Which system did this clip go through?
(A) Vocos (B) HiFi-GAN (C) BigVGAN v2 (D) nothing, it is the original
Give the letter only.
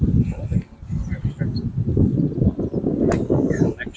D